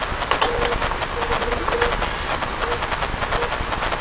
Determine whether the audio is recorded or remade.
recorded